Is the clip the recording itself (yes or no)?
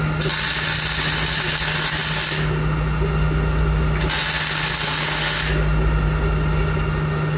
yes